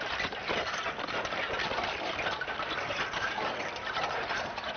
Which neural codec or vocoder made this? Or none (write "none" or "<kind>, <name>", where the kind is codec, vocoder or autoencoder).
none